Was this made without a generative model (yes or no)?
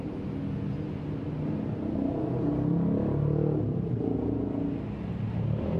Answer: yes